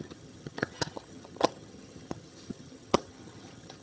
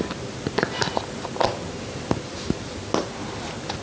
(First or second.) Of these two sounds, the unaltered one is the second